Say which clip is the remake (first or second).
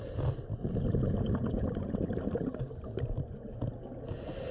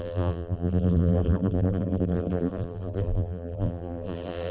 second